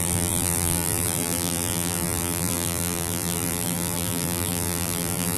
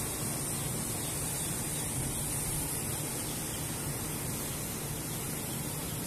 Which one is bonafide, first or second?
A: second